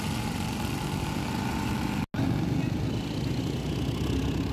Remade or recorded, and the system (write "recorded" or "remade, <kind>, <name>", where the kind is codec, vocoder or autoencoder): recorded